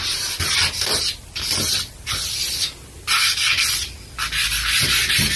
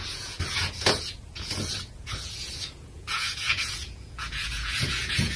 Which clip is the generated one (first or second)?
second